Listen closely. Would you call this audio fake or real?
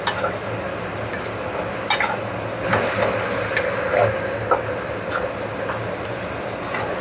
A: real